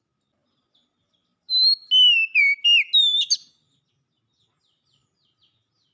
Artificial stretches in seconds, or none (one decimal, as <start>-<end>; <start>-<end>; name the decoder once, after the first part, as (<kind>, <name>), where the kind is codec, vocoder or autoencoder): none